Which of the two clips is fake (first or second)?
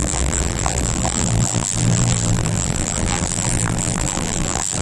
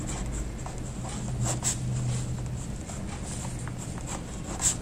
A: first